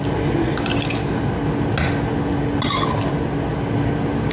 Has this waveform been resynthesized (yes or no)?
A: no